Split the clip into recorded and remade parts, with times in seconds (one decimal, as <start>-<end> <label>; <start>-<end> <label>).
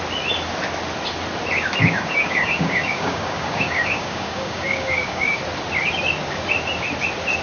0.0-1.8 recorded; 1.8-5.4 remade; 5.4-7.4 recorded